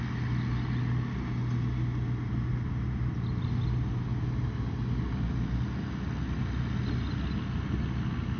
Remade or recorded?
recorded